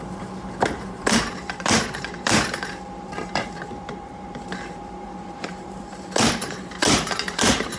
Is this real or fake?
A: fake